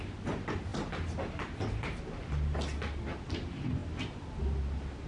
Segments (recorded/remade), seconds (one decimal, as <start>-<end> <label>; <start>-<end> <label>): 0.0-5.1 recorded